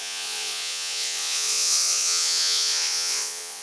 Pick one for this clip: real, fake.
fake